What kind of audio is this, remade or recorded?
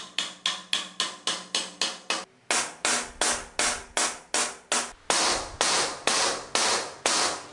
recorded